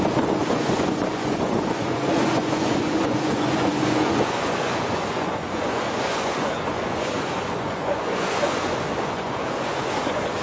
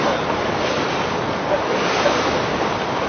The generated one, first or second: first